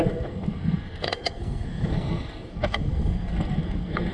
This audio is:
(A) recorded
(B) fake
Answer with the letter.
B